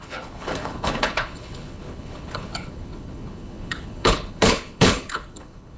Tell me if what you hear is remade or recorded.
remade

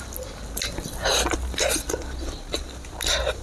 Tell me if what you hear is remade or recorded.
recorded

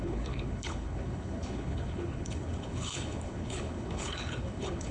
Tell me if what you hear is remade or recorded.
remade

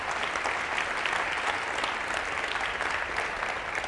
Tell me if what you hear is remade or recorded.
recorded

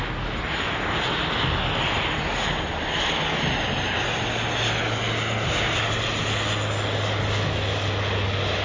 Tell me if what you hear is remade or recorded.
recorded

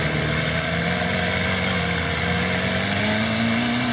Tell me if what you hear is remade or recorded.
recorded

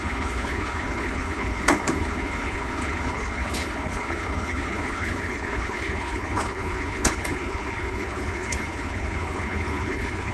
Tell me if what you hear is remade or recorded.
remade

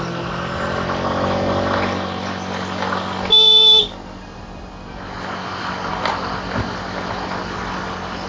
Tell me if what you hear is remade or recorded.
recorded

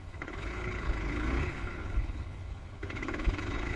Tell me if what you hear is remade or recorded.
remade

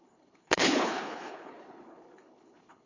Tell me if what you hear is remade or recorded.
remade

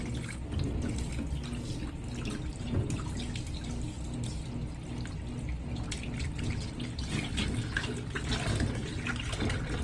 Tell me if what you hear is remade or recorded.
recorded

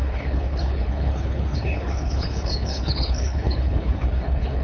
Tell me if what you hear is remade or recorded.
remade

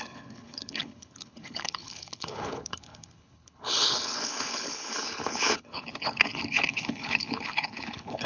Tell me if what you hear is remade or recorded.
remade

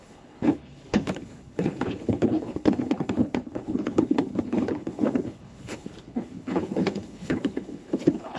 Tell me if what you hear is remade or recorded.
remade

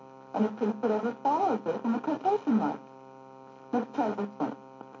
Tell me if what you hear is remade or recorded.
recorded